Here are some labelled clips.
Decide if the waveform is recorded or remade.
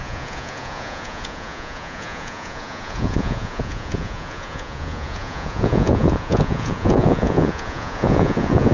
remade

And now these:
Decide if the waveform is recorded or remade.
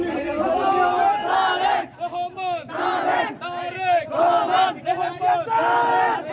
recorded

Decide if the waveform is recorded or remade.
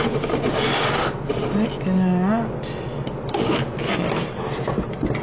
recorded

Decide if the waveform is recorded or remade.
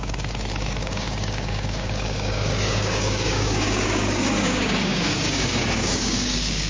remade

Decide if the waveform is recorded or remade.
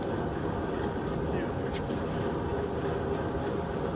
recorded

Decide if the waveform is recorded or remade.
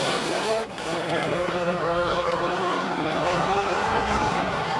remade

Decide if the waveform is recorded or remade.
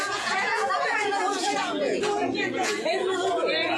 remade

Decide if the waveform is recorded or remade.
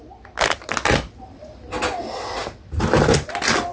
recorded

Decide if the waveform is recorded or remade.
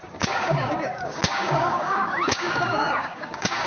remade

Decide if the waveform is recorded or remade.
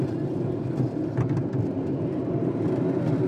recorded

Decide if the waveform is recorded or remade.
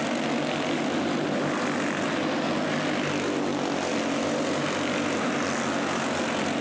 recorded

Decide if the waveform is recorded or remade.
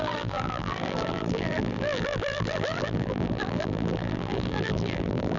remade